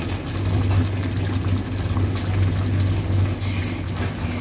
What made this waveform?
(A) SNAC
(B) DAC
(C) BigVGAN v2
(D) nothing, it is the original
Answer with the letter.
D